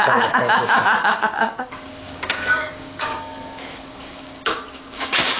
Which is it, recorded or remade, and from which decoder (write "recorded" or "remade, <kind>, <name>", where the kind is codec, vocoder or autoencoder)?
remade, codec, DAC